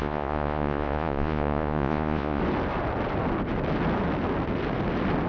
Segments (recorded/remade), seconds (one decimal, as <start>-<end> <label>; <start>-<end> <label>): 0.0-2.4 remade; 2.4-5.3 recorded